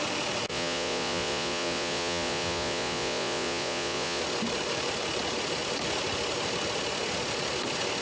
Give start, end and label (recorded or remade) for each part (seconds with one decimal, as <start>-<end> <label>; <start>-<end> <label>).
0.0-0.5 recorded; 0.5-4.2 remade; 4.2-8.0 recorded